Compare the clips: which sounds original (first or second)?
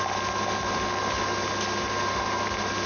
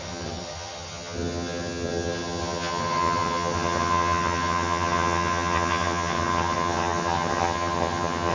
first